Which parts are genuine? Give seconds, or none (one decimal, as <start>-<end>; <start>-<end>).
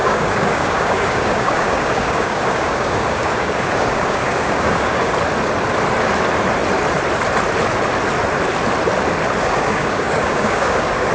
5.1-9.4